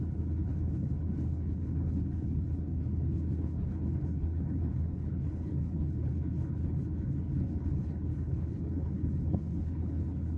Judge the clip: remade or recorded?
remade